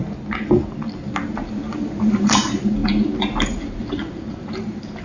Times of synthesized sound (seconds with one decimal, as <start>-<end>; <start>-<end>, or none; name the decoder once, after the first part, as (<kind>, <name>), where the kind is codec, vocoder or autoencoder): 1.3-5.0 (vocoder, BigVGAN v2)